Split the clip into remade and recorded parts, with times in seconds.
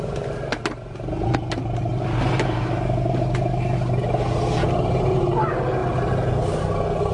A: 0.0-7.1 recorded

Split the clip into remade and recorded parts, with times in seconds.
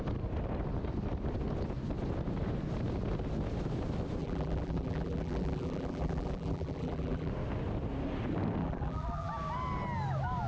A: 0.0-4.2 recorded; 4.2-7.3 remade; 7.3-8.6 recorded; 8.6-9.3 remade; 9.3-10.5 recorded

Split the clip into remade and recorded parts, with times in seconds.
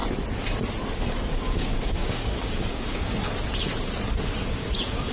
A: 0.0-1.0 recorded; 1.0-3.1 remade; 3.1-4.4 recorded; 4.4-5.1 remade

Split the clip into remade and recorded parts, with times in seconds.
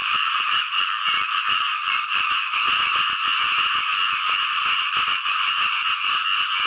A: 0.0-2.3 remade; 2.3-6.7 recorded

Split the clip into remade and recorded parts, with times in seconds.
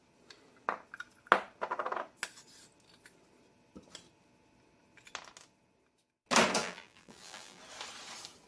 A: 0.0-6.6 recorded; 6.6-7.6 remade; 7.6-8.5 recorded